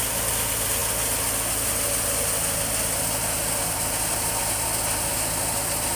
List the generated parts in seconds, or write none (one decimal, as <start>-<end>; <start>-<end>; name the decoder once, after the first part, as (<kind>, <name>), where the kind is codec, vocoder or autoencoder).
none

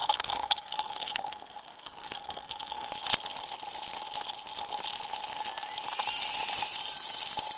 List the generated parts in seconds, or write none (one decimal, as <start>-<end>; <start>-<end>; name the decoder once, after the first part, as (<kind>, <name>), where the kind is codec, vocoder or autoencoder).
0.0-2.9 (codec, SNAC)

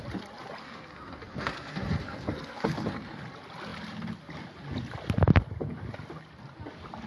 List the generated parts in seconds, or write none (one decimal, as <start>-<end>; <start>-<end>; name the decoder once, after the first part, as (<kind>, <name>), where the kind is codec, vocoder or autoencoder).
0.6-3.2 (codec, SNAC)

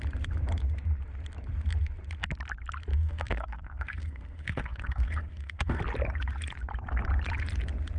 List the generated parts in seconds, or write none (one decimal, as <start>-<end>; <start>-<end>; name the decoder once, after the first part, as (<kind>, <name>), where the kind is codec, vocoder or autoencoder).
2.9-5.8 (codec, SNAC)

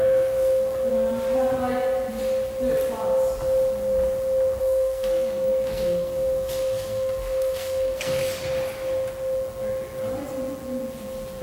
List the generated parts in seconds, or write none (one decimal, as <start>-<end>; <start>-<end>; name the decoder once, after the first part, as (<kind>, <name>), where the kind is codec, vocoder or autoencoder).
0.0-0.9 (codec, SNAC); 4.6-8.2

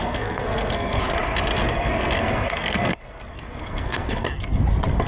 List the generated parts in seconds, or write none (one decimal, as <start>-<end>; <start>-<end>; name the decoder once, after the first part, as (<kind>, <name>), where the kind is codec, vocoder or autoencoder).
0.0-1.0 (codec, SNAC); 1.5-4.6

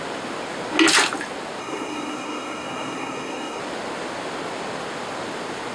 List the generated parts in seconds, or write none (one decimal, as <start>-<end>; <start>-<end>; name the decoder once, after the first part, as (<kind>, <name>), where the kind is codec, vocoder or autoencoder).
1.6-3.6 (codec, SNAC)

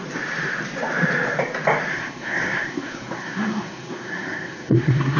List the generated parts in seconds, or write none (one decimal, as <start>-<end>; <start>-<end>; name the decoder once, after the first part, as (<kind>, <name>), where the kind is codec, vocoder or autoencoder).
1.9-5.2 (codec, SNAC)